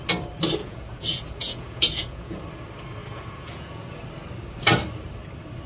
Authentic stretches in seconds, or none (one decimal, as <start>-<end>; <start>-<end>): 0.0-0.6; 2.4-3.0; 4.0-5.7